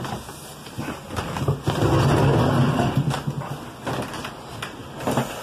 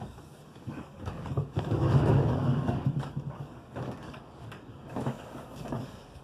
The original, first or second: first